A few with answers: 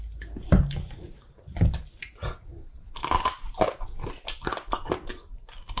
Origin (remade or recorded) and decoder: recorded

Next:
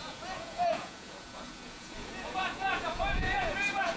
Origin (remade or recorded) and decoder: remade, vocoder, Vocos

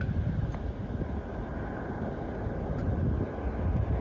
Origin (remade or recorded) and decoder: recorded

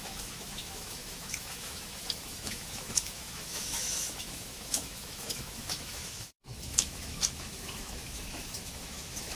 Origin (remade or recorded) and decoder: remade, autoencoder, DAC-VAE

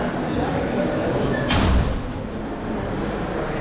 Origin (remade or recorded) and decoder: recorded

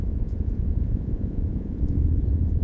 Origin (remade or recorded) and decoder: remade, vocoder, Vocos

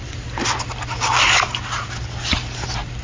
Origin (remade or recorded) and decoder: recorded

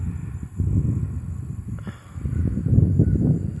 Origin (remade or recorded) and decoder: recorded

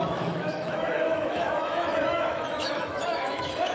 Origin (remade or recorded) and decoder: remade, autoencoder, DAC-VAE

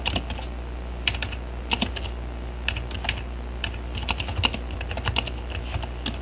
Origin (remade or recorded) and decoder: recorded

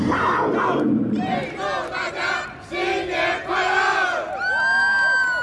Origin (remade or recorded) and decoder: recorded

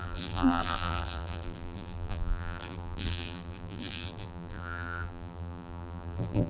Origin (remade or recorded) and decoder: remade, vocoder, BigVGAN v2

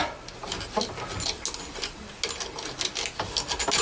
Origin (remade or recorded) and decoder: recorded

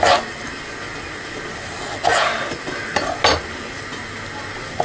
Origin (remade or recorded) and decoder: recorded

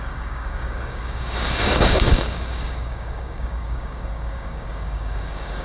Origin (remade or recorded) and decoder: remade, codec, DAC